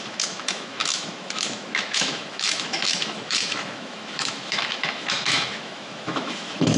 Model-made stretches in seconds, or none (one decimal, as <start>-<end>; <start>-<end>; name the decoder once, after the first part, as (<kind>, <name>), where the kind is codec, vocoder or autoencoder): 0.0-6.8 (autoencoder, DAC-VAE)